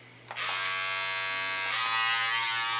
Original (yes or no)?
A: yes